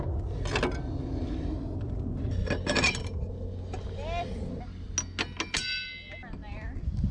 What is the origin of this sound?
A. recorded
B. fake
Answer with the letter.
A